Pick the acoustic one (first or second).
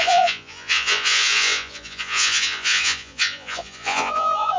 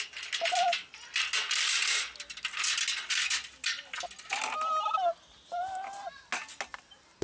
second